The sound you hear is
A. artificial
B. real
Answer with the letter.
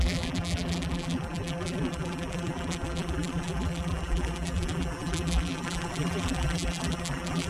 A